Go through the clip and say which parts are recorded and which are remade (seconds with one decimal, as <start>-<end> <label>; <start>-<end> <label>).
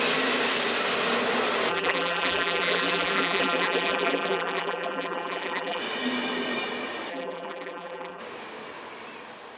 0.0-1.7 recorded; 1.7-5.8 remade; 5.8-7.1 recorded; 7.1-8.2 remade; 8.2-9.6 recorded